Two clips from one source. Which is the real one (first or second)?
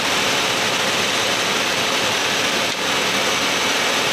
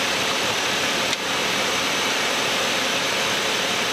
first